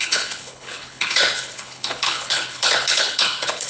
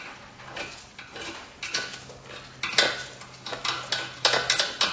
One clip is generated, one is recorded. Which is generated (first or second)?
first